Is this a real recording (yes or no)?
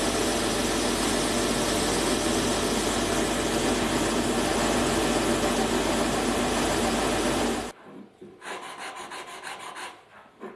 yes